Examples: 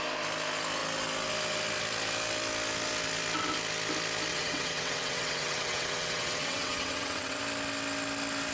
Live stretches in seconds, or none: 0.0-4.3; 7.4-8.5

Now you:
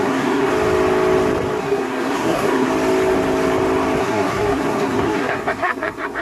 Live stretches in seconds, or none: 0.5-1.6; 2.7-4.0

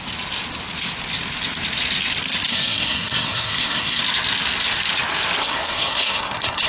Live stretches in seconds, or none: 0.0-2.5; 4.0-5.4